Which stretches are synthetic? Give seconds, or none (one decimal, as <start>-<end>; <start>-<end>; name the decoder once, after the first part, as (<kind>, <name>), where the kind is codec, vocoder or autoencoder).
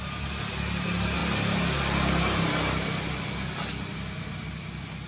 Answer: none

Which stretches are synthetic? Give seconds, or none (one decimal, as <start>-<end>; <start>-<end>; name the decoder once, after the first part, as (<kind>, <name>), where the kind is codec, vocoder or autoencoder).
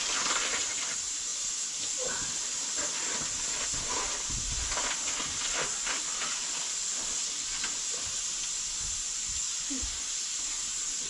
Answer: none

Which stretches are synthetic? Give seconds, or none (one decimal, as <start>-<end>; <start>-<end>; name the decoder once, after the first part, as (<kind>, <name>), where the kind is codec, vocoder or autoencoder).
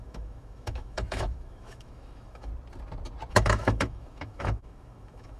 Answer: 0.0-2.5 (autoencoder, DAC-VAE); 3.3-5.4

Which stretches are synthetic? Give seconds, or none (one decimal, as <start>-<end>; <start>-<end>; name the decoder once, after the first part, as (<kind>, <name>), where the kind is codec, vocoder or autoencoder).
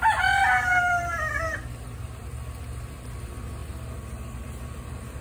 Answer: none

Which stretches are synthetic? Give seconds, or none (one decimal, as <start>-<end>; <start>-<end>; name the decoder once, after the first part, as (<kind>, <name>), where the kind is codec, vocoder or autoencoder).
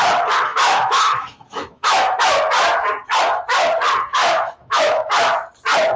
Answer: 0.5-2.3 (autoencoder, DAC-VAE); 4.1-5.1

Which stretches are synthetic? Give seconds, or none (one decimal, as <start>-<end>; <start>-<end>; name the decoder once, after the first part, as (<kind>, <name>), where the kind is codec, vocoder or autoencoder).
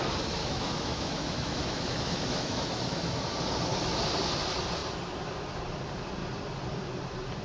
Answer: 0.4-3.2 (autoencoder, DAC-VAE)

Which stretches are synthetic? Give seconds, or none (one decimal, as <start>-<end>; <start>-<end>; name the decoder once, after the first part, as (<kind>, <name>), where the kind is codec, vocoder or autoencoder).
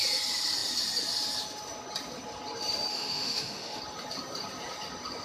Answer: 2.9-3.8 (autoencoder, DAC-VAE)